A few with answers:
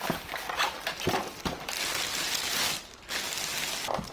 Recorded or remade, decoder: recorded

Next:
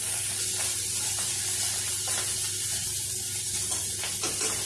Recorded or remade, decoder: recorded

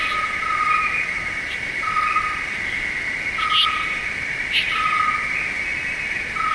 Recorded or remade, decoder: recorded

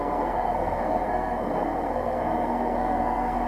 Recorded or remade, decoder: remade, codec, SNAC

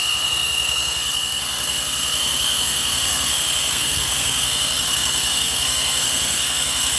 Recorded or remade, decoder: remade, codec, SNAC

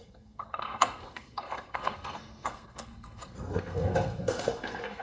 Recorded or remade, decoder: remade, codec, SNAC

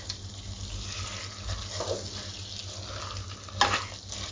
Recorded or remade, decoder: recorded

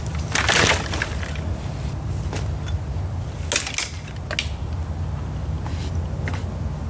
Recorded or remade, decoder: recorded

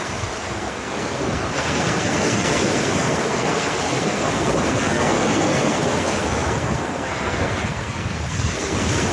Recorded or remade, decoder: remade, codec, SNAC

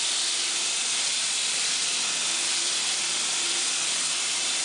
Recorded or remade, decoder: recorded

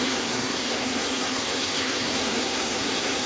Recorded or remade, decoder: remade, codec, SNAC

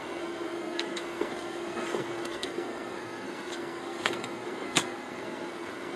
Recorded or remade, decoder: remade, codec, SNAC